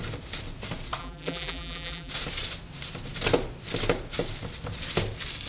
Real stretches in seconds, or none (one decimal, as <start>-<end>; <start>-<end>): 0.0-1.0; 2.1-5.5